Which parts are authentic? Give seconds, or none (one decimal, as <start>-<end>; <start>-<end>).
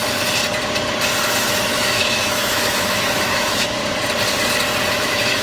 0.0-1.5; 3.8-4.9